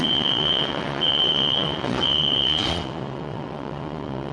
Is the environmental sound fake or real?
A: fake